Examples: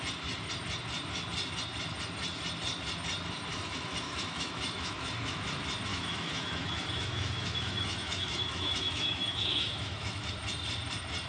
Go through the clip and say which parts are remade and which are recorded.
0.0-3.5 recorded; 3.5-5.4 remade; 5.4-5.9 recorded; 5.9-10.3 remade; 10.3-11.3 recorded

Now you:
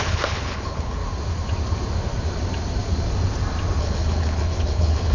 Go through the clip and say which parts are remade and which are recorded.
0.0-1.0 remade; 1.0-3.8 recorded; 3.8-5.1 remade

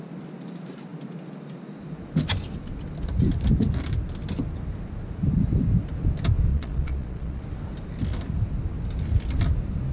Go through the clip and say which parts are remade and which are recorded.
0.0-6.5 recorded; 6.5-7.4 remade; 7.4-9.9 recorded

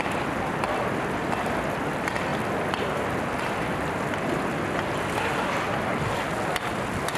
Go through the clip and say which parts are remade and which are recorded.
0.0-7.2 recorded

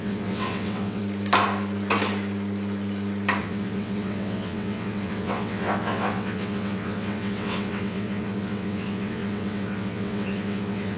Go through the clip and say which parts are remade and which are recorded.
0.0-1.0 remade; 1.0-3.4 recorded; 3.4-11.0 remade

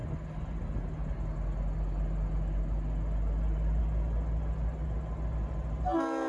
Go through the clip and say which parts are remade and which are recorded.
0.0-6.3 recorded